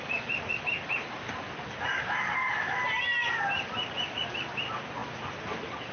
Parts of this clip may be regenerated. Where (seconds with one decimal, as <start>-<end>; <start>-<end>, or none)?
none